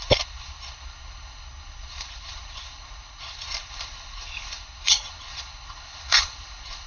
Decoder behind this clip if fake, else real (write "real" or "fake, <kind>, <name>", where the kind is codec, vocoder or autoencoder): fake, codec, HILCodec